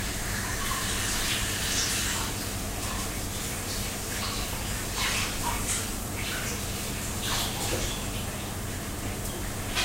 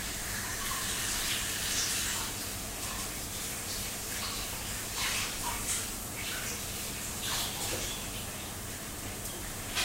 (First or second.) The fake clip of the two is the second